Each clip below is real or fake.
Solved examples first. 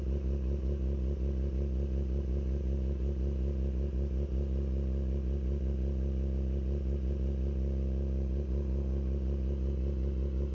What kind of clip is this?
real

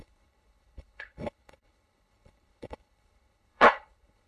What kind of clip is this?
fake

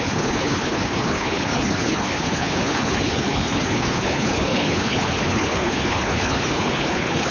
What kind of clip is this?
fake